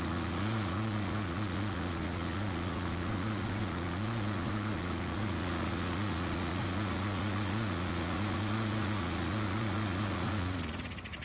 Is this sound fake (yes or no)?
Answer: yes